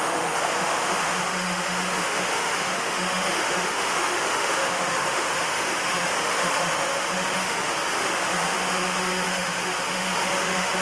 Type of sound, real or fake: fake